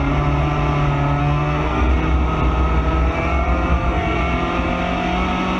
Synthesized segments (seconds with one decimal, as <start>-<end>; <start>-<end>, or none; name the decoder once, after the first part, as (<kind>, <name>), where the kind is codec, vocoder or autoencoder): 1.2-1.9 (codec, SNAC); 3.7-4.2